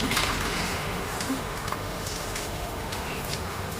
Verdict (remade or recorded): remade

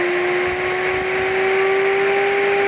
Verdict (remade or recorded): recorded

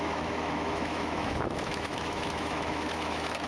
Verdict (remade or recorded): remade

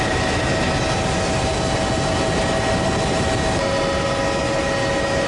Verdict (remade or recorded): recorded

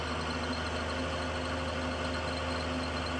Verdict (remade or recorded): recorded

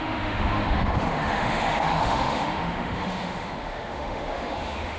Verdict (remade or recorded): remade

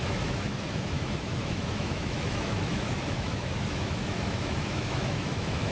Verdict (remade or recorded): remade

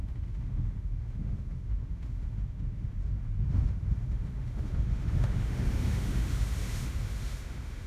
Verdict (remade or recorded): remade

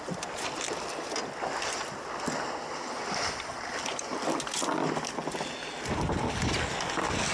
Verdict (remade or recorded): recorded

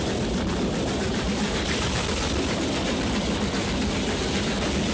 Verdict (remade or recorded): recorded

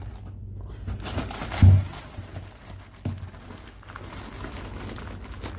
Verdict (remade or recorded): recorded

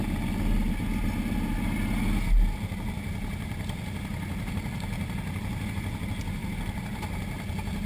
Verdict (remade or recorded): recorded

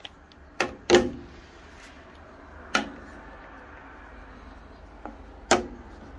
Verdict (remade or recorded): recorded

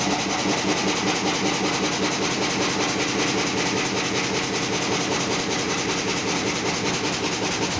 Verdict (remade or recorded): recorded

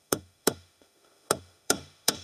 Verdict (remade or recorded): remade